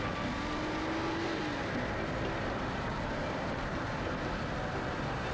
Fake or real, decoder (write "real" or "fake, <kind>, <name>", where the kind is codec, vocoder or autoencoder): real